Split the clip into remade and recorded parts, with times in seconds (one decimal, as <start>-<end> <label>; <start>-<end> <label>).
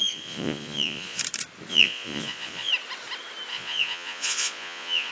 0.0-1.2 remade; 1.2-1.7 recorded; 1.7-2.7 remade; 2.7-3.5 recorded; 3.5-5.1 remade